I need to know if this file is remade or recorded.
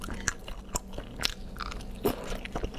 recorded